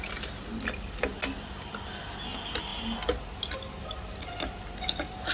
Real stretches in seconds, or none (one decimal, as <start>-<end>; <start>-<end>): 0.0-5.3